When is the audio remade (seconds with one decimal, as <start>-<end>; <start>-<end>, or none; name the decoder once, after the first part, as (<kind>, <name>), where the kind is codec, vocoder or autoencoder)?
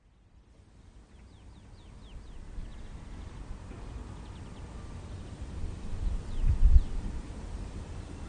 none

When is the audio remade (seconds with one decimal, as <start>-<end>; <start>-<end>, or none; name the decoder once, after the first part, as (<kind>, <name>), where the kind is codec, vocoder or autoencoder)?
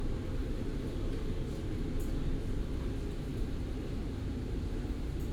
0.4-2.1 (vocoder, BigVGAN v2); 3.3-5.3